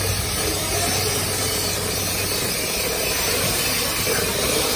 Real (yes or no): yes